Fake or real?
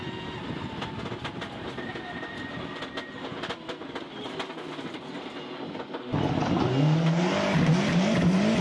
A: real